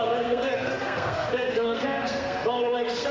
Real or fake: fake